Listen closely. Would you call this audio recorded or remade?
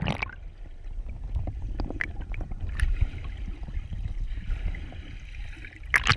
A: recorded